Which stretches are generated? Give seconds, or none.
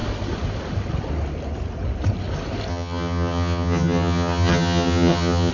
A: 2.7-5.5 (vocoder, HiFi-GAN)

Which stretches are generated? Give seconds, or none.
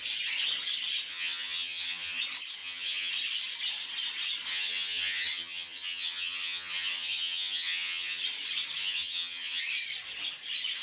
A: 1.1-2.2 (vocoder, HiFi-GAN); 2.6-3.1; 4.5-8.2; 8.8-9.6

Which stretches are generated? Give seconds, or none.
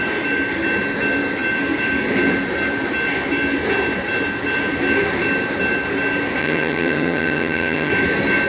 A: 6.4-7.9 (vocoder, HiFi-GAN)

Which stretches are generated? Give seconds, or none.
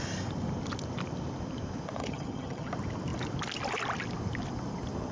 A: 2.0-2.7 (vocoder, HiFi-GAN)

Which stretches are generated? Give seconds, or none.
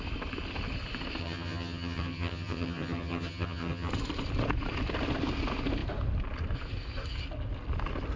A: 1.2-3.9 (vocoder, HiFi-GAN)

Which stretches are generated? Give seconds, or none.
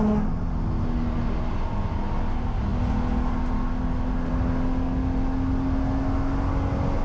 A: none